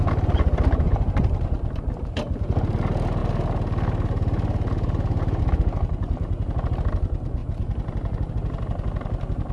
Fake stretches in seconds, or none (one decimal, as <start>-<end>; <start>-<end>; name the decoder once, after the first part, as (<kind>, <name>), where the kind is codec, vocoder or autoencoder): 7.4-8.3 (vocoder, BigVGAN v2)